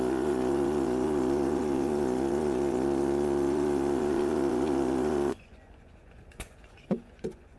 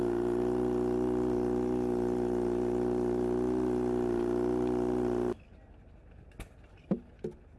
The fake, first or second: first